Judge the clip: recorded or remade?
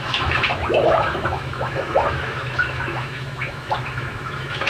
remade